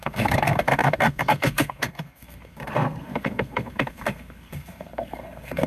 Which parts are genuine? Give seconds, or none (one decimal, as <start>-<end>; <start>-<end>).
none